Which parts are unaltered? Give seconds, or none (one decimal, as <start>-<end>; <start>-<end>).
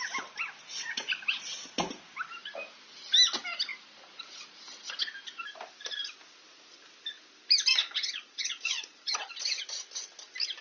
0.0-7.8; 9.6-10.6